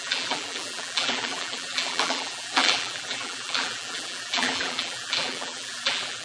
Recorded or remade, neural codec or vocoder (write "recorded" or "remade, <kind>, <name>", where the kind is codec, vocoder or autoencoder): remade, vocoder, BigVGAN v2